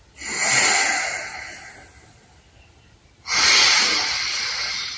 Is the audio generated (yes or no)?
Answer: no